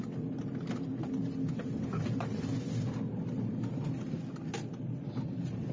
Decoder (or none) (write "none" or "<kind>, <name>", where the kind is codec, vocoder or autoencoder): none